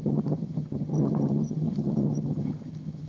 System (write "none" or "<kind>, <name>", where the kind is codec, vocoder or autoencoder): vocoder, HiFi-GAN